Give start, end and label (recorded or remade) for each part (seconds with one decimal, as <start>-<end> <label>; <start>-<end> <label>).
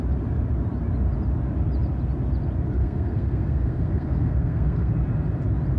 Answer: 0.0-2.8 recorded; 2.8-4.9 remade; 4.9-5.8 recorded